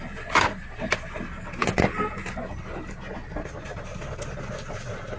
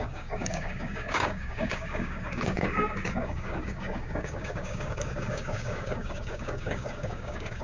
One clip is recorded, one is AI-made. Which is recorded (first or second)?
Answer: first